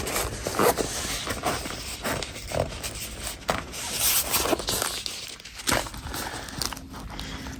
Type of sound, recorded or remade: recorded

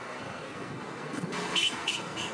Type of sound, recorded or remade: remade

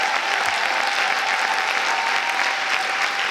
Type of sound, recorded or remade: recorded